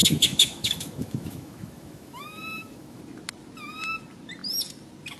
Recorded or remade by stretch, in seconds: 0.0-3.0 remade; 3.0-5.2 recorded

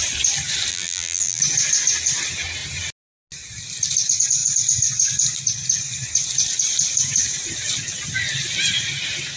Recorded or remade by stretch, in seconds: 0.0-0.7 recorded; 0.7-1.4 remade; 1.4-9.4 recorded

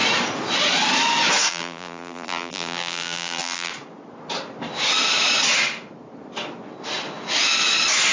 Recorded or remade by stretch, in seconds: 0.0-1.5 recorded; 1.5-3.7 remade; 3.7-8.1 recorded